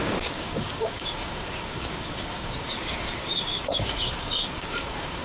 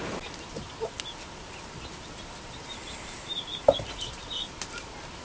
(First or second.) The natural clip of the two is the second